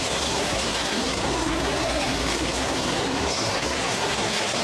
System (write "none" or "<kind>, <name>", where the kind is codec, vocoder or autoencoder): codec, SNAC